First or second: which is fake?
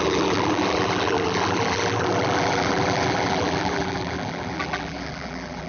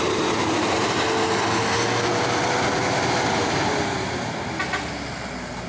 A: first